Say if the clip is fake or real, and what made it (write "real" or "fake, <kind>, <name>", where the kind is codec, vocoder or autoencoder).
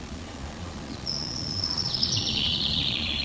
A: fake, vocoder, Vocos